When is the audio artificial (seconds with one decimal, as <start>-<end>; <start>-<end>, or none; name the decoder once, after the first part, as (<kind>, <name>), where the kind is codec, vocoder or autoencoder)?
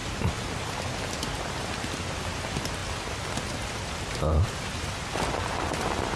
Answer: none